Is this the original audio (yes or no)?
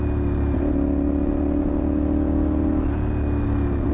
yes